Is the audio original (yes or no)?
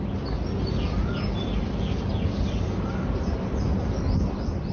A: yes